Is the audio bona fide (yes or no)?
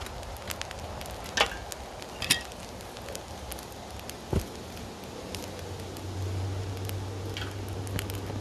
yes